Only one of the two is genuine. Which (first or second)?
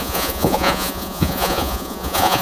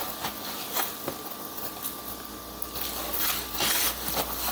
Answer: second